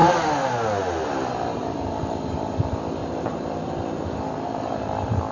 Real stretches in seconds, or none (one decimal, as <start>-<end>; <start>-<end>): 0.5-1.6; 2.1-3.0; 4.7-5.3